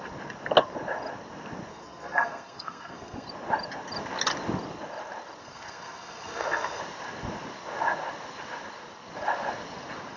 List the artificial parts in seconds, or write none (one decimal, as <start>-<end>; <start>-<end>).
1.7-3.3; 5.4-6.8